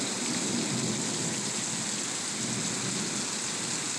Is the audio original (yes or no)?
yes